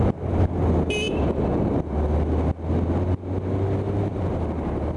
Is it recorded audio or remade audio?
remade